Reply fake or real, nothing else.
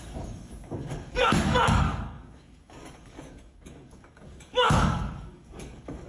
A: fake